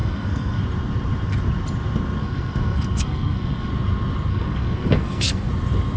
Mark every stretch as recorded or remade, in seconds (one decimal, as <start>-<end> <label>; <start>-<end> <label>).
0.0-0.6 remade; 0.6-2.2 recorded; 2.2-3.7 remade; 3.7-4.3 recorded; 4.3-5.5 remade; 5.5-6.0 recorded